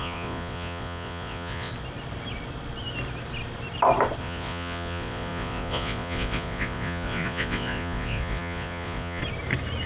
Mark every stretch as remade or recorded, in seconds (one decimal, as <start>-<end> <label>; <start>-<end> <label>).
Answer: 0.0-1.7 remade; 1.7-4.2 recorded; 4.2-9.2 remade; 9.2-9.9 recorded